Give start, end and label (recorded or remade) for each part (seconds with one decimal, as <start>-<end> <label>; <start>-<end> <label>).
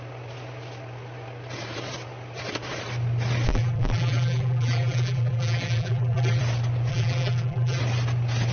0.0-3.5 recorded; 3.5-6.4 remade; 6.4-6.9 recorded; 6.9-7.8 remade; 7.8-8.5 recorded